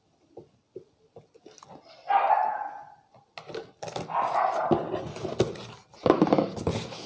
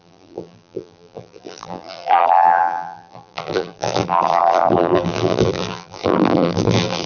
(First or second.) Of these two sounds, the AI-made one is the second